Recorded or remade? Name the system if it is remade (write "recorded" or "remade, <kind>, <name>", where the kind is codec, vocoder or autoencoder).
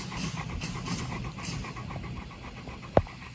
recorded